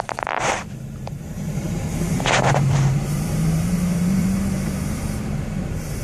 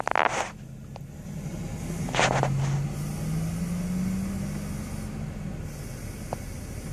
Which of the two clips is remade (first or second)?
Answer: first